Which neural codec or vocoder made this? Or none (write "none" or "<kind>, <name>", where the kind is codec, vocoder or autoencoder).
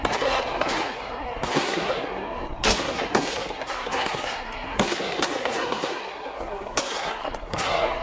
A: codec, SNAC